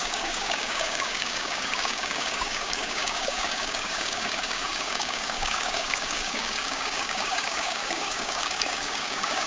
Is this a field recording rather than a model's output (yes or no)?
no